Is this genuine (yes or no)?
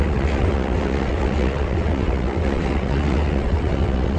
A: no